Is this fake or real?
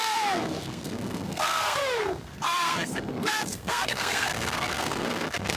fake